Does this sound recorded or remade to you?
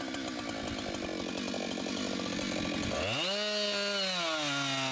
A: recorded